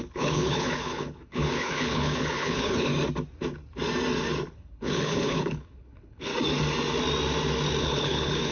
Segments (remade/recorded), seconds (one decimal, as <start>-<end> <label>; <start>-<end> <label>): 0.0-2.9 remade; 2.9-4.5 recorded; 4.5-6.3 remade; 6.3-7.8 recorded; 7.8-8.5 remade